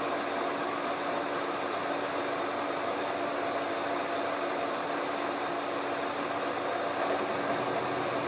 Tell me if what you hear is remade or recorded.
recorded